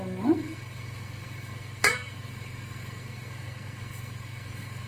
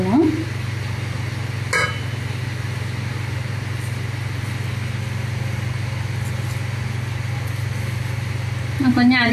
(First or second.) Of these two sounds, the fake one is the first